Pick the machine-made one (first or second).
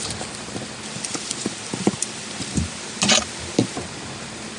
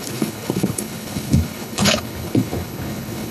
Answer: second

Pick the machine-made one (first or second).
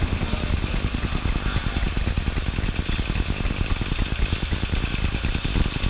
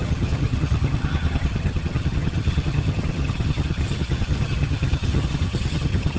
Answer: second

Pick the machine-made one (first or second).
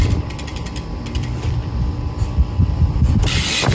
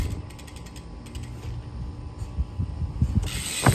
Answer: first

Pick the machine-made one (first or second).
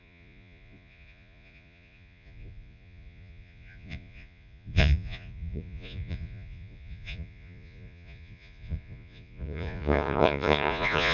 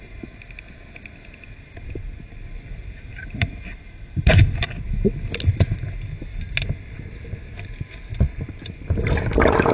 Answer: first